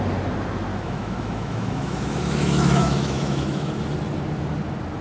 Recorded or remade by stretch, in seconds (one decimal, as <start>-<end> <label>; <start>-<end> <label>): 0.0-0.7 recorded; 0.7-3.7 remade; 3.7-5.0 recorded